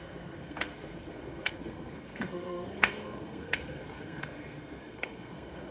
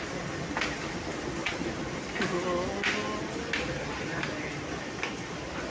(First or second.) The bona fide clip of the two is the second